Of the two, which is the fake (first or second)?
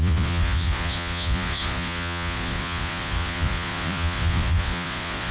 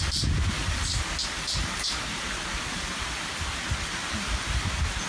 first